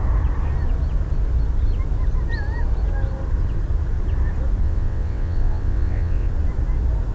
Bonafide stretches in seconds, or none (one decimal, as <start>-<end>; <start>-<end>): 0.0-4.6; 6.3-7.1